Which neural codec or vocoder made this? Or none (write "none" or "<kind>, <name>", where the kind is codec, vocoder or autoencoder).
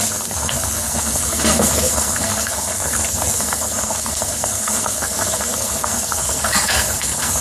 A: codec, SNAC